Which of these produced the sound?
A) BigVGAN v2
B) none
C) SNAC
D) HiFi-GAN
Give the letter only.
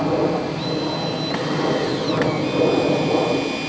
B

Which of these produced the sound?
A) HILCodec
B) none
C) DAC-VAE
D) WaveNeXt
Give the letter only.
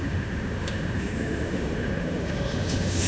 C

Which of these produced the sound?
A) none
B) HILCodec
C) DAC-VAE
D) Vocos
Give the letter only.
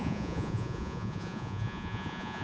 D